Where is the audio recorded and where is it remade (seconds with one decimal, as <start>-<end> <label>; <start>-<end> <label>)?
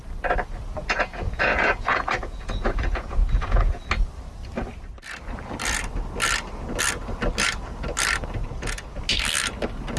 0.0-0.8 recorded; 0.8-3.9 remade; 3.9-8.4 recorded; 8.4-9.0 remade; 9.0-10.0 recorded